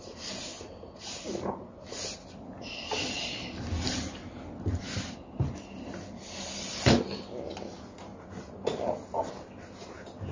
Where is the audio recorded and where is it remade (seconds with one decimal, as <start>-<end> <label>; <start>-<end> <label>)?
0.0-10.3 recorded